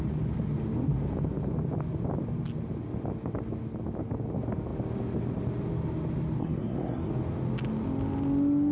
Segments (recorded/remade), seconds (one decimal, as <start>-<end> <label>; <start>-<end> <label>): 0.0-6.4 recorded; 6.4-7.1 remade; 7.1-8.7 recorded